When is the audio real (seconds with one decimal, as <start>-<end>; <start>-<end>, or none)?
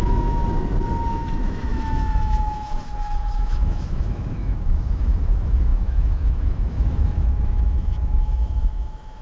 0.4-1.1